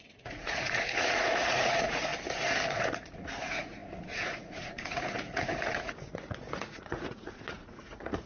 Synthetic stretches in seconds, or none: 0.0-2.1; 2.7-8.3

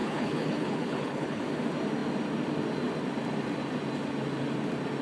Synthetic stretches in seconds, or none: 0.0-1.4